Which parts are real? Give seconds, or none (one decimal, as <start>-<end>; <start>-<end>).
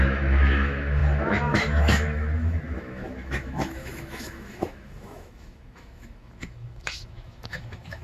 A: none